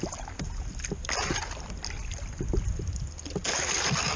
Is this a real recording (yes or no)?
yes